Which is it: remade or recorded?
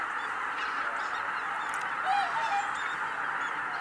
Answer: recorded